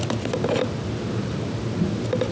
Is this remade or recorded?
recorded